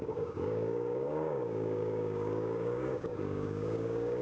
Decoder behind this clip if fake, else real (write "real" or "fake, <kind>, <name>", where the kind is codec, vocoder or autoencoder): fake, codec, DAC